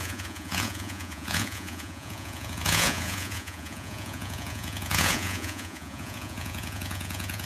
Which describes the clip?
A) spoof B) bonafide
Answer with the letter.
A